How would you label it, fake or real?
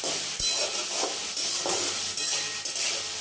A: real